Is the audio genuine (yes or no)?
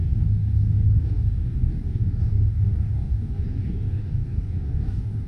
no